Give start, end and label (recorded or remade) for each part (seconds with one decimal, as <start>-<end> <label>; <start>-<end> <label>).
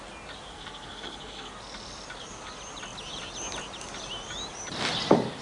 0.0-0.5 recorded; 0.5-1.5 remade; 1.5-5.4 recorded